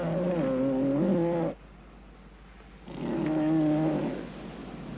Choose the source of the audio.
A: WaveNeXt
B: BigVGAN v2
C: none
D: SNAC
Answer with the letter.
C